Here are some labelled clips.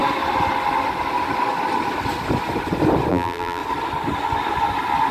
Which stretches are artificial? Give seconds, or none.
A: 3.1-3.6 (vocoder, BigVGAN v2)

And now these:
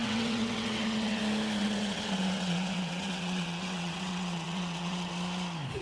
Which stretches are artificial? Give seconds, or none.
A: 0.0-1.2 (vocoder, WaveNeXt); 1.6-5.1